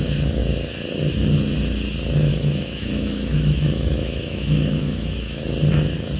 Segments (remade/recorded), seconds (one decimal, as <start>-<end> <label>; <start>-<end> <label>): 0.0-2.3 recorded; 2.3-5.4 remade; 5.4-6.2 recorded